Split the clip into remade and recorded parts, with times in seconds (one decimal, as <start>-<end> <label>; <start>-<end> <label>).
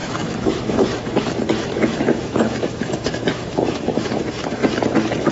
0.0-4.6 remade; 4.6-5.3 recorded